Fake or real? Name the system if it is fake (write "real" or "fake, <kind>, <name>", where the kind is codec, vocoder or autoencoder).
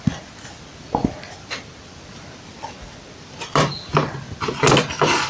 real